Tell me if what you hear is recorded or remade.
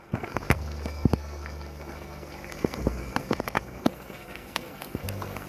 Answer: remade